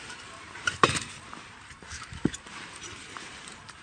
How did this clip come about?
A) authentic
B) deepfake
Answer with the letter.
B